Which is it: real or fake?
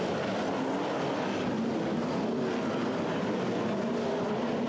real